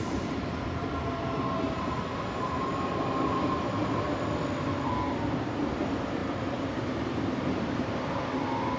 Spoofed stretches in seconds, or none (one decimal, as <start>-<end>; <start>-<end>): 6.2-8.2